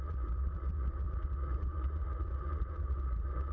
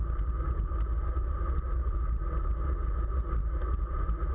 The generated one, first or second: first